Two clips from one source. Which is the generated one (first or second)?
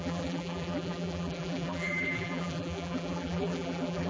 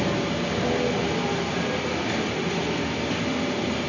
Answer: first